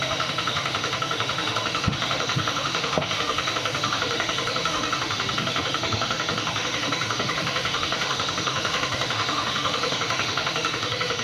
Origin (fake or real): fake